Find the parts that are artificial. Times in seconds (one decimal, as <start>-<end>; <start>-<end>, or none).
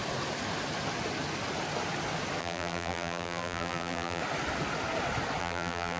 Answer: 2.4-4.2; 5.4-6.0